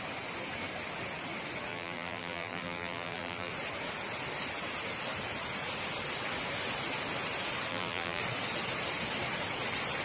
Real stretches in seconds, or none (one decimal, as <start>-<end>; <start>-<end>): 0.0-1.7; 3.5-7.7; 8.2-10.0